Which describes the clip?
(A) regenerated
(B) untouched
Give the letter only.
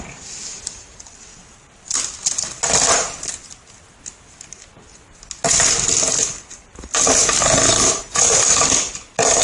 B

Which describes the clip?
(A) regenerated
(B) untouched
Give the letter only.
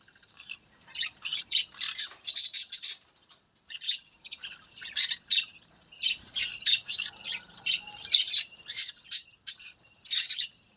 A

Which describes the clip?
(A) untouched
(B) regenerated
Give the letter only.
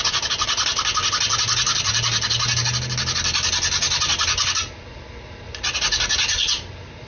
A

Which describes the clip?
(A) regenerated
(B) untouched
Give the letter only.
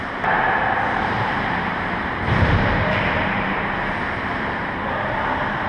A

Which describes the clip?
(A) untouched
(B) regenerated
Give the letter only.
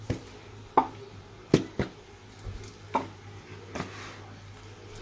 A